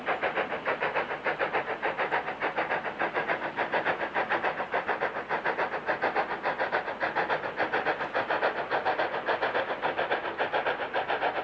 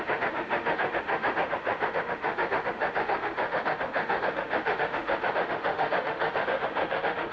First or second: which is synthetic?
second